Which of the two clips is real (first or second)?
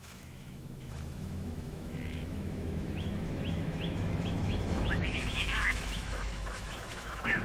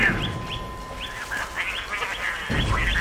second